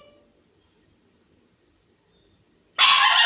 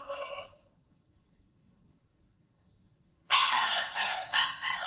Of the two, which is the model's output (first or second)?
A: second